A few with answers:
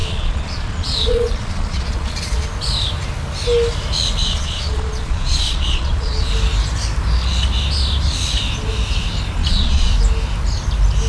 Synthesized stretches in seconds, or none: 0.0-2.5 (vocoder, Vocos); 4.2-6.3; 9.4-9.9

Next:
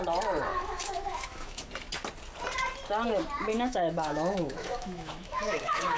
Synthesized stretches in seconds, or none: 0.5-1.7 (autoencoder, DAC-VAE); 3.5-6.0

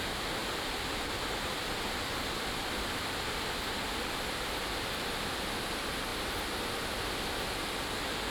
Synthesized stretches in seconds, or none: 0.4-5.4 (vocoder, BigVGAN v2)

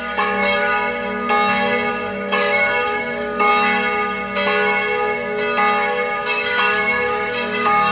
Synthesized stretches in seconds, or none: 0.0-0.7 (codec, DAC); 1.9-3.5; 6.2-7.9